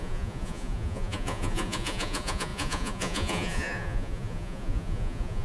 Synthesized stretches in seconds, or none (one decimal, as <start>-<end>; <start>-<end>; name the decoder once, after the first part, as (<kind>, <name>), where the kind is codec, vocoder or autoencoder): 0.0-5.4 (vocoder, Vocos)